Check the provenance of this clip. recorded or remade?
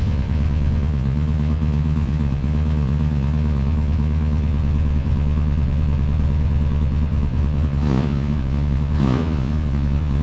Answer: remade